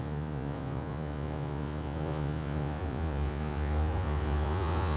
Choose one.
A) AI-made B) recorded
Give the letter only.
A